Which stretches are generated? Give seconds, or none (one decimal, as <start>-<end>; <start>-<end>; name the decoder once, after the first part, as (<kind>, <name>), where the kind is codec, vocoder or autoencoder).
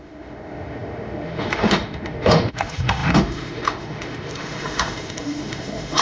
0.0-6.0 (autoencoder, DAC-VAE)